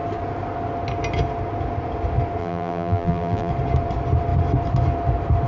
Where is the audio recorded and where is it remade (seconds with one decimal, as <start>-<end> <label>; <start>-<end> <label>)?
0.0-2.4 recorded; 2.4-3.5 remade; 3.5-5.5 recorded